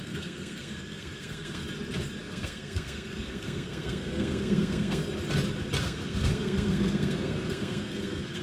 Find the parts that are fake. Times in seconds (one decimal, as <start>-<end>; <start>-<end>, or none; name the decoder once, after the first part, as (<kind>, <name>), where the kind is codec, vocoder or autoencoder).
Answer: 0.0-1.6 (codec, SNAC); 2.2-5.0; 5.8-8.4